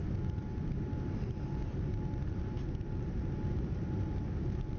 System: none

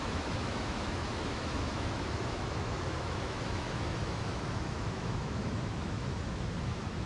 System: autoencoder, DAC-VAE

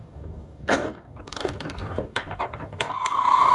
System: codec, DAC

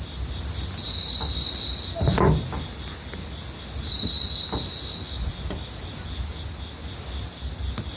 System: none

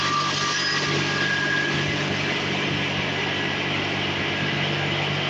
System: none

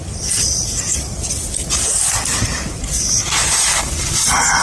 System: none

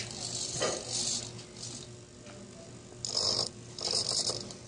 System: none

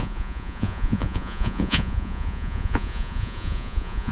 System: vocoder, Vocos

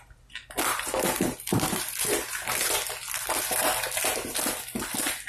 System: none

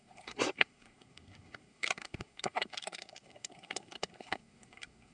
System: codec, SNAC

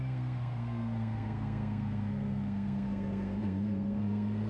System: codec, SNAC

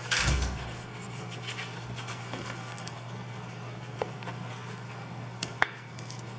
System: codec, SNAC